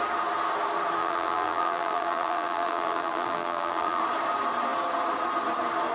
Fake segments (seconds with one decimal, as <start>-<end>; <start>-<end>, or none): 1.0-4.0